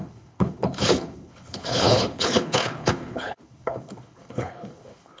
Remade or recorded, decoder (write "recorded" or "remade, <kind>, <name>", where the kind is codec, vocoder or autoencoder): remade, codec, HILCodec